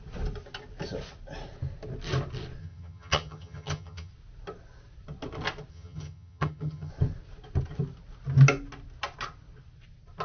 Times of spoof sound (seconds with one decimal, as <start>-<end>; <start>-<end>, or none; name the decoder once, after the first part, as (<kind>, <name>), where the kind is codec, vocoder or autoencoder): 2.6-4.1 (vocoder, HiFi-GAN); 5.7-6.9